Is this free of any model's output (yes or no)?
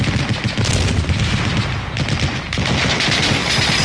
yes